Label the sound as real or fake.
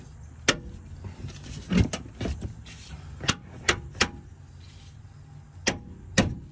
real